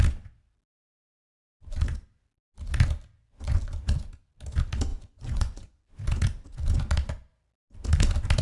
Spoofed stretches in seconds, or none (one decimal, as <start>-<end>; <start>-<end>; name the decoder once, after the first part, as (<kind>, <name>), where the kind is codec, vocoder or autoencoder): 4.9-5.8 (vocoder, Vocos)